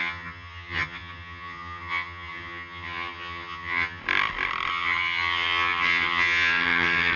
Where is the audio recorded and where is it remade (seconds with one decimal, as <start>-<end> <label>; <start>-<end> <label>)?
0.0-4.0 remade; 4.0-4.7 recorded; 4.7-7.2 remade